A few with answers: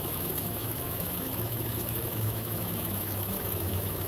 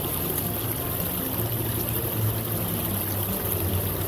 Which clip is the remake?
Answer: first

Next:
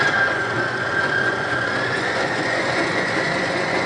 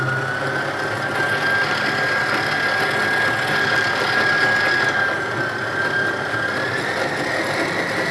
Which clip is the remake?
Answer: first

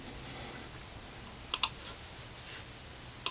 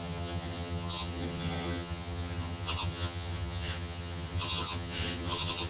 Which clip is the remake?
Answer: second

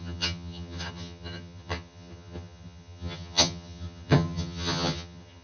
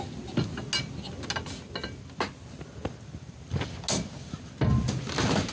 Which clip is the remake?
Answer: first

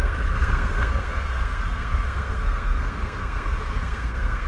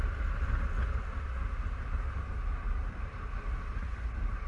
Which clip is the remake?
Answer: first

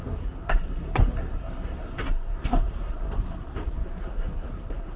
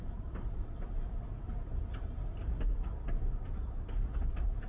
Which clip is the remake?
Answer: first